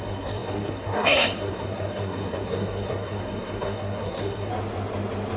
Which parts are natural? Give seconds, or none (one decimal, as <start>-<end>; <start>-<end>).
4.5-5.4